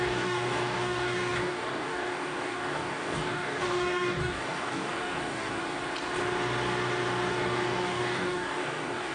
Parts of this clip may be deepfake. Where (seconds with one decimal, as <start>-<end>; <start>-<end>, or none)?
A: 0.0-5.6; 7.3-9.1